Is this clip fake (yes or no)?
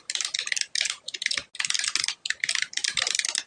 no